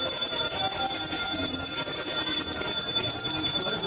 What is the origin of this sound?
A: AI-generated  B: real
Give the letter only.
A